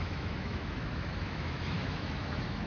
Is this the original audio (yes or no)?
no